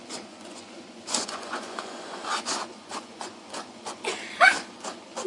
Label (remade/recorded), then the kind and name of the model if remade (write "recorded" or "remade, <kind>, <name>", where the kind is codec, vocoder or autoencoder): remade, vocoder, Vocos